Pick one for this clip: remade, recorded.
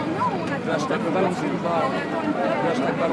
recorded